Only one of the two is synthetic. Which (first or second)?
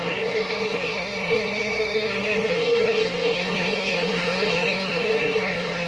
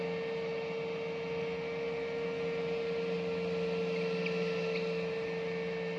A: first